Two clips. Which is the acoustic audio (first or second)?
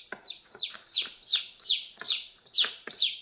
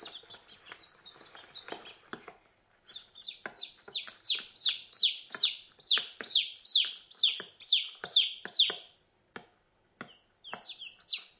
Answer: second